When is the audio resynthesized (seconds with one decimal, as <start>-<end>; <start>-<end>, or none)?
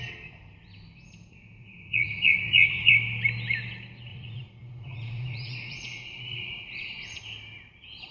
1.6-2.9; 4.1-7.2